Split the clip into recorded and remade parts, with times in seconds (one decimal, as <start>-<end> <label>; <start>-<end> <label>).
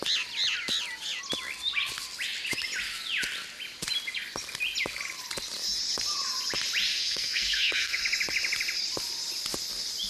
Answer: 0.0-6.9 recorded; 6.9-8.0 remade; 8.0-10.1 recorded